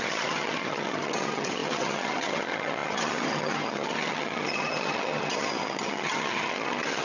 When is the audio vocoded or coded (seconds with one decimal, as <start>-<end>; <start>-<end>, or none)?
0.0-7.0